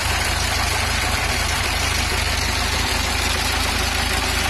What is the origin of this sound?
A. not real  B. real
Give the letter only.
B